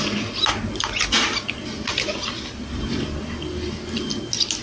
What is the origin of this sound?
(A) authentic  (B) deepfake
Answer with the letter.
A